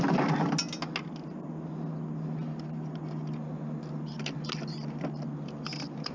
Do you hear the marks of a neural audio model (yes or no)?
no